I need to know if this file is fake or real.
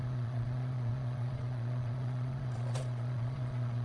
fake